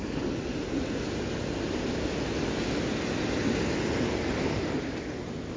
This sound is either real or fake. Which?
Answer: real